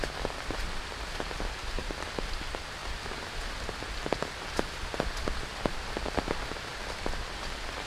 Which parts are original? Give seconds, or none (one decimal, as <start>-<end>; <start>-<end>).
0.0-7.9

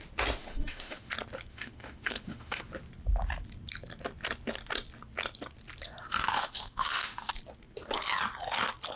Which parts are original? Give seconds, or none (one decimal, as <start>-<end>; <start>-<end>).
0.0-0.4; 1.1-1.5; 2.6-6.3; 7.3-9.0

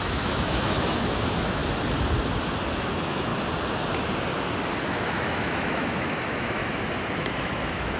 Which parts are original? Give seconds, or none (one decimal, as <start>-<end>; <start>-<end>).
1.6-2.7; 3.3-4.8; 6.6-7.1

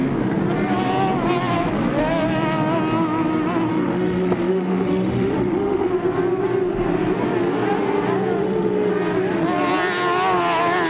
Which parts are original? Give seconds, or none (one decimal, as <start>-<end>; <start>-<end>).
0.0-3.7; 5.9-8.4; 8.9-10.9

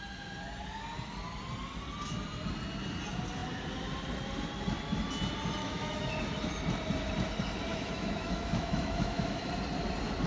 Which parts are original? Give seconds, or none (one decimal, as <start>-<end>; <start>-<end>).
0.0-5.6; 6.1-7.7; 9.5-10.3

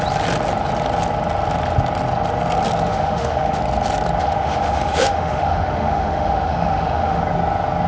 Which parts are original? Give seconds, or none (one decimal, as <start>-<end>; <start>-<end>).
0.0-2.9; 3.6-4.2; 7.2-7.9

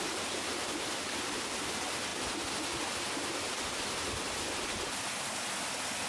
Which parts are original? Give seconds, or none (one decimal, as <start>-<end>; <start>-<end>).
0.0-6.1

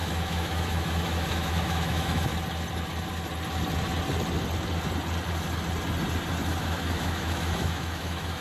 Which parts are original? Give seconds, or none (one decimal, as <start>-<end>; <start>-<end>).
2.3-6.6